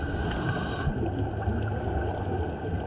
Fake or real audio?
real